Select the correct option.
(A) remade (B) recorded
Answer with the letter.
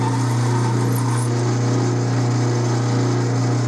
B